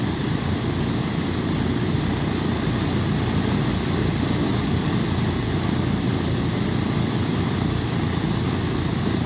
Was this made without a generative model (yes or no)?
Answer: yes